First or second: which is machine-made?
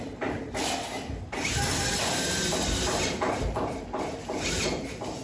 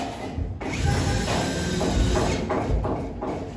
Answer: first